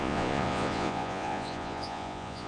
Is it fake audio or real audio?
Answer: fake